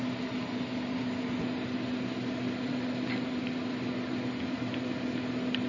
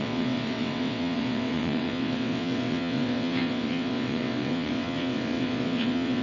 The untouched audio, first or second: first